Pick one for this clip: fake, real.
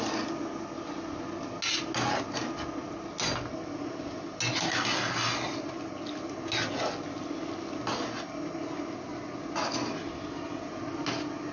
real